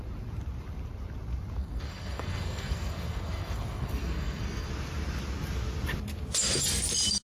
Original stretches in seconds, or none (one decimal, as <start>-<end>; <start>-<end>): 0.0-1.6; 4.7-7.3